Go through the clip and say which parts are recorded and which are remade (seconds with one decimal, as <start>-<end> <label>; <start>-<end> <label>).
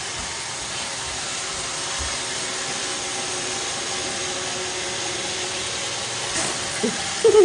0.0-7.4 recorded